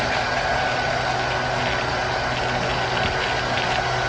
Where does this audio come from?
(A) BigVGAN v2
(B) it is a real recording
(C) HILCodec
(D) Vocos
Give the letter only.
B